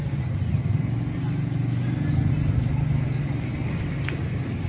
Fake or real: real